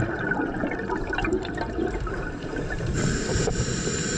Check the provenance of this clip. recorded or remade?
remade